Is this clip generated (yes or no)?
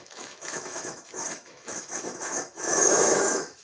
yes